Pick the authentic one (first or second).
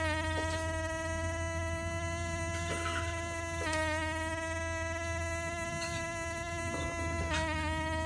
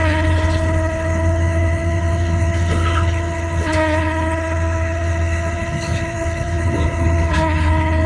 first